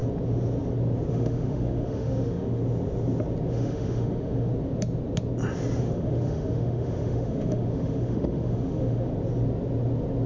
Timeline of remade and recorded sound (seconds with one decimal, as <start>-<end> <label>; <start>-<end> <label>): 0.0-1.1 recorded; 1.1-2.6 remade; 2.6-3.5 recorded; 3.5-4.5 remade; 4.5-5.8 recorded; 5.8-9.1 remade; 9.1-10.3 recorded